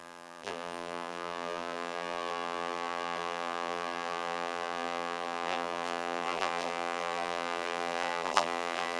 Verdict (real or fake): fake